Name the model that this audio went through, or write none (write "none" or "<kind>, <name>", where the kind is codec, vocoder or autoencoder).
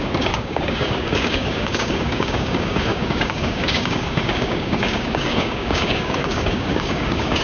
codec, DAC